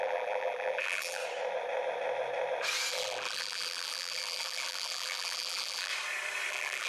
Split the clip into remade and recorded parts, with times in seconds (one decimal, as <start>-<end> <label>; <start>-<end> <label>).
0.0-1.2 remade; 1.2-2.9 recorded; 2.9-5.9 remade; 5.9-6.5 recorded; 6.5-6.9 remade